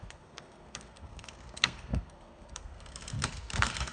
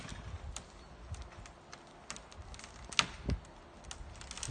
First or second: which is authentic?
second